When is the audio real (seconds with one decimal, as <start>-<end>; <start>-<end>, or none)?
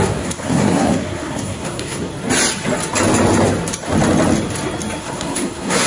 2.1-5.0